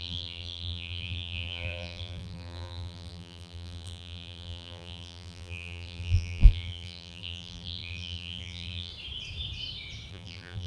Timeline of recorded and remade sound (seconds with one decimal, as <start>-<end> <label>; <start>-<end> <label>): 0.0-8.9 remade; 8.9-10.1 recorded; 10.1-10.7 remade